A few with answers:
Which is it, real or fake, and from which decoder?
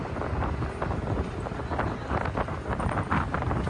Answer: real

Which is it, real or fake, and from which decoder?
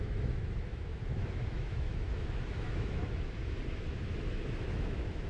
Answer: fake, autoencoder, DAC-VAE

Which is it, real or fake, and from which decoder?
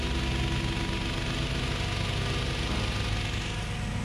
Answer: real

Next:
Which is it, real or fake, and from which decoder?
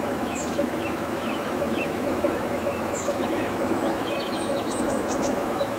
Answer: fake, autoencoder, DAC-VAE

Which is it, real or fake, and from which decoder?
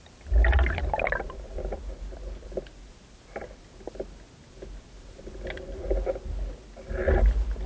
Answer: real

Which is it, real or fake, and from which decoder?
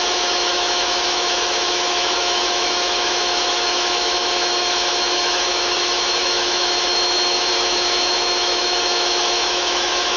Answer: fake, autoencoder, DAC-VAE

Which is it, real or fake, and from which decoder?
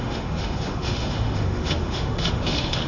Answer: fake, autoencoder, DAC-VAE